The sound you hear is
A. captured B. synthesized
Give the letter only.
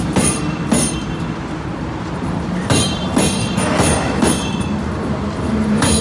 B